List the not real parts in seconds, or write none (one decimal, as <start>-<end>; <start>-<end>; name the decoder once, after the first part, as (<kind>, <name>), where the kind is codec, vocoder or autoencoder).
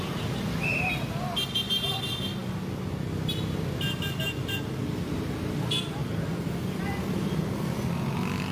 none